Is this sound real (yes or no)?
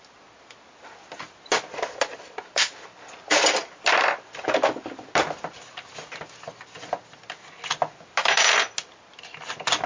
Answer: yes